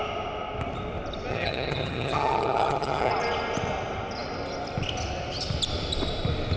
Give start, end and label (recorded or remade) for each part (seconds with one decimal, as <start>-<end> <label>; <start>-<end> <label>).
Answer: 0.0-1.3 recorded; 1.3-3.1 remade; 3.1-6.6 recorded